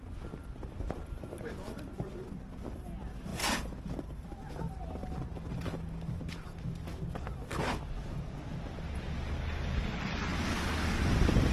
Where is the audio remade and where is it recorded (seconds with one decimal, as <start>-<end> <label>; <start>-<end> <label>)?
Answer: 0.0-1.3 recorded; 1.3-1.8 remade; 1.8-10.5 recorded; 10.5-11.1 remade; 11.1-11.5 recorded